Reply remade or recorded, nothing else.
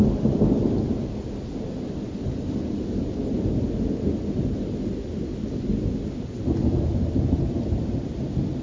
recorded